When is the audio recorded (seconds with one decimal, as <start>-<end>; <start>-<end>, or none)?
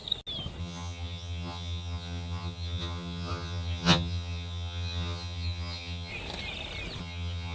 0.0-0.6; 6.1-7.0